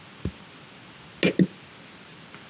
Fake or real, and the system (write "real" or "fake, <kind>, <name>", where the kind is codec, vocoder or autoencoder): real